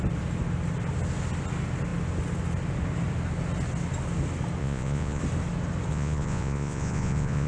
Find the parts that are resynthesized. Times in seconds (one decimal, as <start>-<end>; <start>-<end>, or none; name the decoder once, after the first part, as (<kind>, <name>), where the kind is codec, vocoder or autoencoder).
4.6-5.2 (vocoder, Vocos); 5.9-7.5